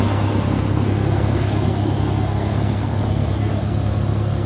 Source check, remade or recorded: remade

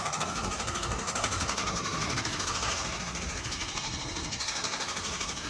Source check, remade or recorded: remade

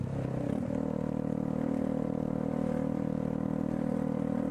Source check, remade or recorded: recorded